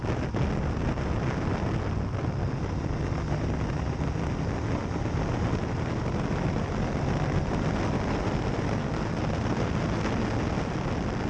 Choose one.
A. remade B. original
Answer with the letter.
B